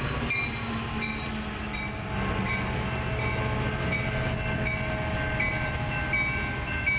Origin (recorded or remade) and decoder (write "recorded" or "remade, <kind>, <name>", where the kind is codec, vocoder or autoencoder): recorded